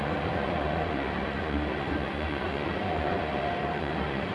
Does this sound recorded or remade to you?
remade